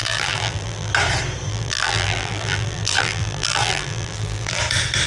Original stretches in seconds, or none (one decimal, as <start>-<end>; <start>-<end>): 0.9-1.5; 4.6-5.1